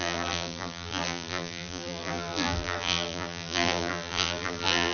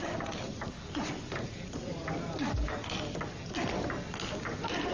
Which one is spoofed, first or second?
first